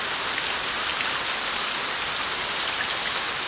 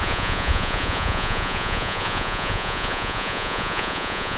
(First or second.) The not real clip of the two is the second